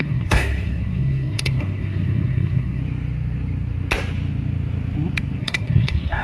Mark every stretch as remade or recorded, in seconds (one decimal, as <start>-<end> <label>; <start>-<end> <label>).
0.0-2.8 remade; 2.8-5.4 recorded; 5.4-6.2 remade